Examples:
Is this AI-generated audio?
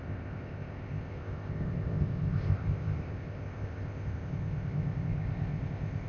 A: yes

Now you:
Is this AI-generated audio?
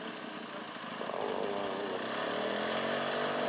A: no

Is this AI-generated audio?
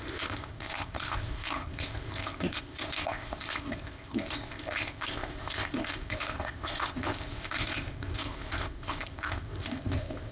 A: yes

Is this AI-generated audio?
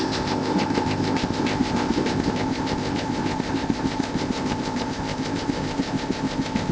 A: yes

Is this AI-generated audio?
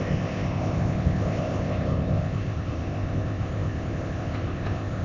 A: yes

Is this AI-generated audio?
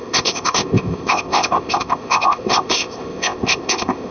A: yes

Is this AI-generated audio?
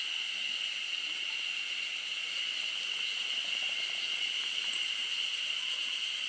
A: no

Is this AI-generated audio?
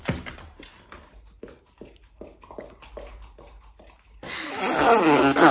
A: no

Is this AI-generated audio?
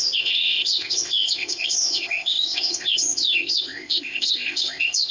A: yes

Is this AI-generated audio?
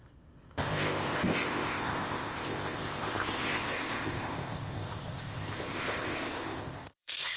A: yes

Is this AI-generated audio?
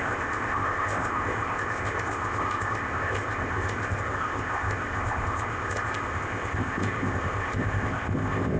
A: yes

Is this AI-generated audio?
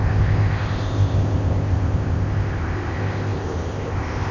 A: yes